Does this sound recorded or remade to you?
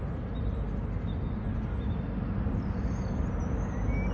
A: recorded